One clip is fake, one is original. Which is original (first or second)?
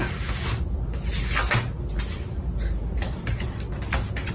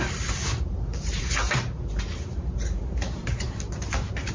first